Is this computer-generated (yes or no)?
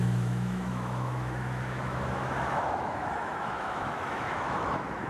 yes